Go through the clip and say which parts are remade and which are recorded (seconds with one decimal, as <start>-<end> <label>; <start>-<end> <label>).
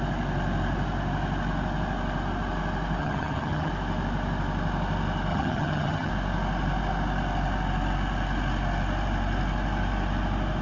0.0-3.0 recorded; 3.0-3.7 remade; 3.7-5.3 recorded; 5.3-6.1 remade; 6.1-10.6 recorded